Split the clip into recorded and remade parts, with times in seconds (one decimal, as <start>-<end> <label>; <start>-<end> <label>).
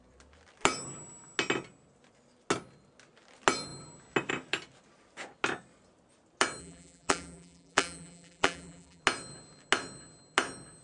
0.0-6.6 recorded; 6.6-9.0 remade; 9.0-10.8 recorded